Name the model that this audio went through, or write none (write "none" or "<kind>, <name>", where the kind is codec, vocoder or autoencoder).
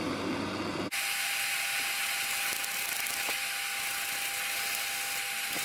none